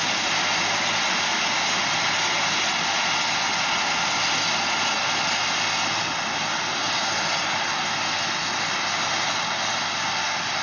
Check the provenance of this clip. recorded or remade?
recorded